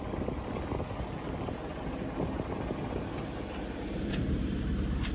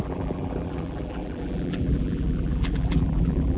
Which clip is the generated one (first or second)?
second